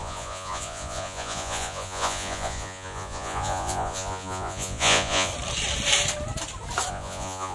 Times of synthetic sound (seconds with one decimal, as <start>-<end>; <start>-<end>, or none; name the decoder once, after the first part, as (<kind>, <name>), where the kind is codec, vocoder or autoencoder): 0.0-5.3 (vocoder, Vocos); 6.9-7.5